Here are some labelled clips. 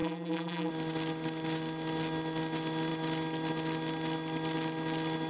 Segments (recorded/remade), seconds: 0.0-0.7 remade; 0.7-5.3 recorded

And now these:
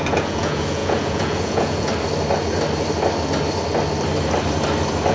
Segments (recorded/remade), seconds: 0.0-1.9 remade; 1.9-5.1 recorded

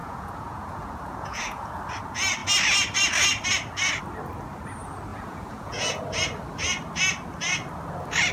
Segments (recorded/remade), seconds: 0.0-1.7 remade; 1.7-5.1 recorded; 5.1-6.0 remade; 6.0-8.3 recorded

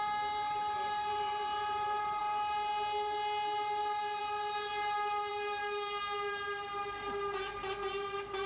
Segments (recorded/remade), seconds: 0.0-8.5 recorded

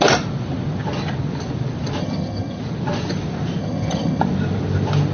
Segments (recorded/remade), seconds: 0.0-2.0 recorded; 2.0-2.6 remade; 2.6-3.6 recorded; 3.6-4.2 remade; 4.2-5.1 recorded

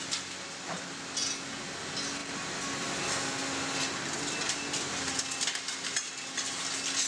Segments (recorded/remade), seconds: 0.0-7.1 recorded